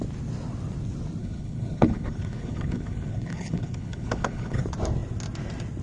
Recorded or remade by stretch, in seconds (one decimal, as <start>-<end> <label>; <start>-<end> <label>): 0.0-1.2 recorded; 1.2-4.6 remade; 4.6-5.8 recorded